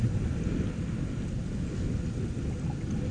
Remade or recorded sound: recorded